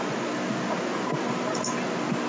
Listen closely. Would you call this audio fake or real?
real